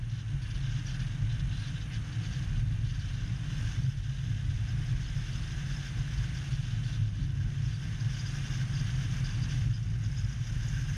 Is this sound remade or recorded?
recorded